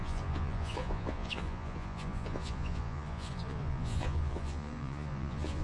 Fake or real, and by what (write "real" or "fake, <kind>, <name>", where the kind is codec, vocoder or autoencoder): fake, vocoder, Vocos